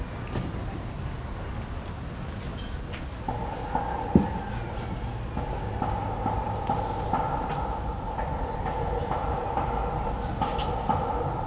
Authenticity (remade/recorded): recorded